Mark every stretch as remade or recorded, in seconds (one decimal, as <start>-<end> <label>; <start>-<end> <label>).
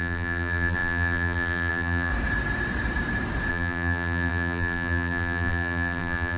0.0-2.1 remade; 2.1-3.5 recorded; 3.5-6.4 remade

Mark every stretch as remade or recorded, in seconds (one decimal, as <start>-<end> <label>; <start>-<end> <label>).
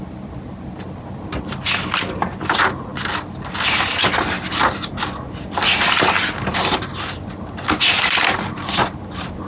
0.0-9.5 recorded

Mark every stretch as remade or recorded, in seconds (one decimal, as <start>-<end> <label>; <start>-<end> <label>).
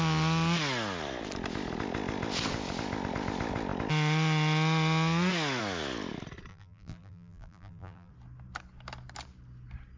0.0-6.5 recorded; 6.5-8.1 remade; 8.1-10.0 recorded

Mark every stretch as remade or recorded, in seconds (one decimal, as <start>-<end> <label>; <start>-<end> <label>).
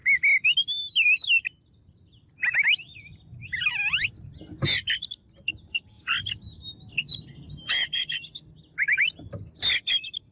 0.0-7.1 recorded; 7.1-8.1 remade; 8.1-10.3 recorded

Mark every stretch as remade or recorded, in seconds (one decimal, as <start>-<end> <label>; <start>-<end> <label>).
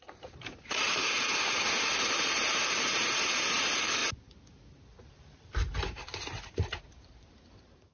0.0-4.0 remade; 4.0-5.1 recorded; 5.1-7.9 remade